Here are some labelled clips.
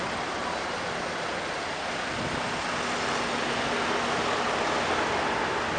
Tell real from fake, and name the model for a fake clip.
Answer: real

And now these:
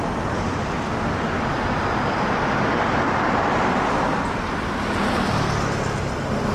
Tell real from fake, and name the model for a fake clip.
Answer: real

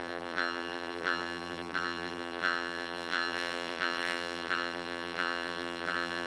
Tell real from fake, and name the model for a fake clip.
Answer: fake, vocoder, BigVGAN v2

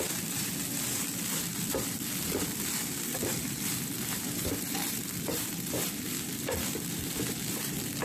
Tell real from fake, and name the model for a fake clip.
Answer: fake, vocoder, BigVGAN v2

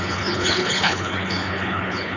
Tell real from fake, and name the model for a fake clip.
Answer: fake, codec, HILCodec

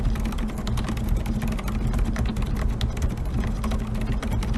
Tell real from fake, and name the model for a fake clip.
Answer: real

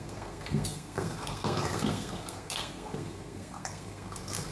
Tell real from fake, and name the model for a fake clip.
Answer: fake, codec, SNAC